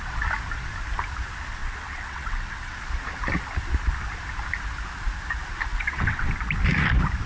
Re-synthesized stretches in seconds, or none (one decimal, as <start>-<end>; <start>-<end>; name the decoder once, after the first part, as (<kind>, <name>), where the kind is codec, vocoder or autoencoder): 1.6-2.7 (vocoder, WaveNeXt); 5.7-6.3